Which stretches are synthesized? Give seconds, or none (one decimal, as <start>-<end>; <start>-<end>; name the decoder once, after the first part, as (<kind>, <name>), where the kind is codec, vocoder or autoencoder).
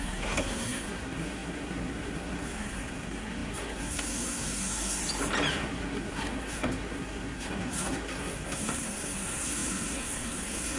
0.0-5.0 (codec, SNAC); 5.5-10.8